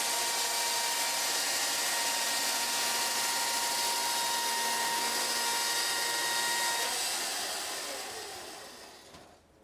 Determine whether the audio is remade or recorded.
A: recorded